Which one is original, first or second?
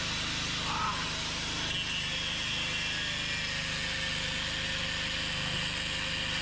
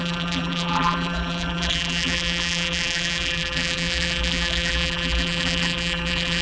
first